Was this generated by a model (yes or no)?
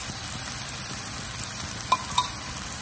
no